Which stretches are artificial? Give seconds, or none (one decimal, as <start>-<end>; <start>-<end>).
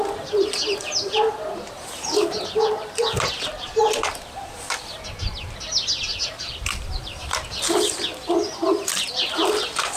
none